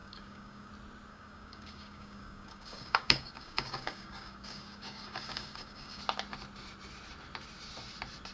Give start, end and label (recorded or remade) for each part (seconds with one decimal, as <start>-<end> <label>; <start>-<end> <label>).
0.0-0.7 remade; 0.7-1.1 recorded; 1.1-6.0 remade; 6.0-8.3 recorded